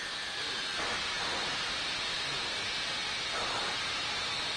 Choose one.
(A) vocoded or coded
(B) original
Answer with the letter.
B